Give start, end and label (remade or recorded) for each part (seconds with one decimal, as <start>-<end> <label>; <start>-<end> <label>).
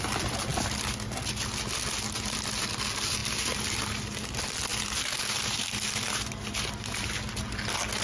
0.0-8.0 recorded